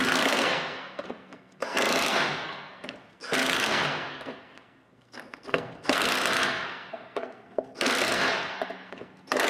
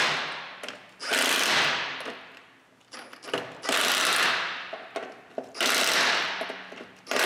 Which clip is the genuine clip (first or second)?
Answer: second